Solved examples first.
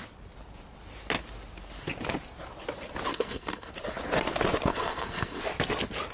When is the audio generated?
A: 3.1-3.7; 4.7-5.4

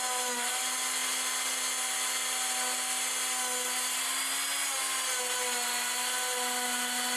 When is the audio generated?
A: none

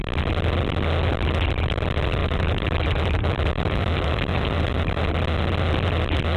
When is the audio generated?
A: 2.2-5.1

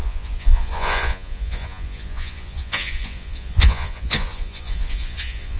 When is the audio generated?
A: 0.0-5.6

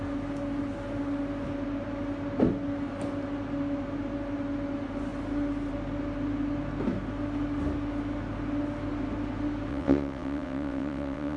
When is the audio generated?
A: 9.7-11.4